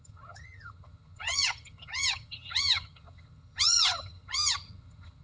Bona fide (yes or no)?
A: no